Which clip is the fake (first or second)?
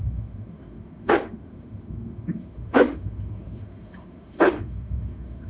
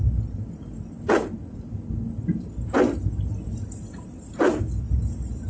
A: first